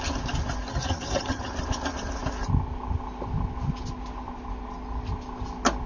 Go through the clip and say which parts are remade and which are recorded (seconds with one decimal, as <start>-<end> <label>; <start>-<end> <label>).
0.0-0.7 recorded; 0.7-1.5 remade; 1.5-5.9 recorded